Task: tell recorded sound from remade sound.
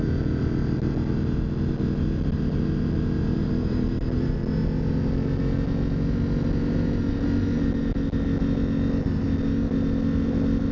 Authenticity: recorded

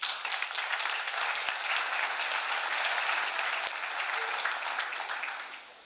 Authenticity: recorded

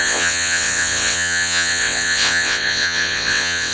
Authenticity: remade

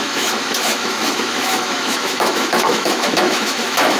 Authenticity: remade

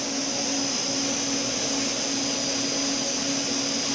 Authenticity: recorded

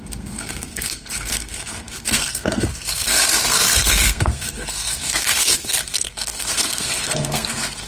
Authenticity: remade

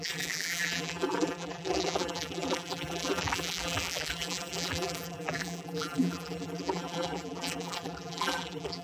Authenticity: remade